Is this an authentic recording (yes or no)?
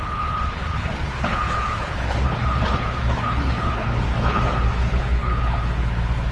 no